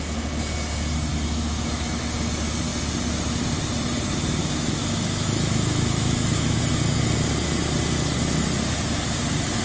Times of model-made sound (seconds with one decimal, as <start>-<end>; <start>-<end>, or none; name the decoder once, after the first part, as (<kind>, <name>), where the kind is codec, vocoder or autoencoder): 1.1-1.9 (autoencoder, DAC-VAE); 4.4-6.6